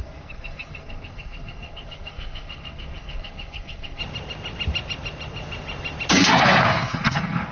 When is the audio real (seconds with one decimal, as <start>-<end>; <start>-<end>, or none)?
4.0-6.1